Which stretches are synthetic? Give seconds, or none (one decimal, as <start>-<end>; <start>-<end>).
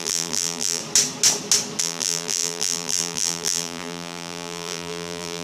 0.0-0.8; 1.8-5.4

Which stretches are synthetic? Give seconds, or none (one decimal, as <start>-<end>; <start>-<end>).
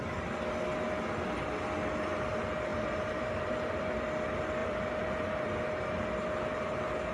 2.7-3.9; 4.6-5.6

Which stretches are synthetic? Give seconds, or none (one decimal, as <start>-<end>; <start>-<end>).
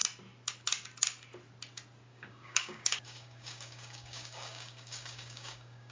2.1-5.9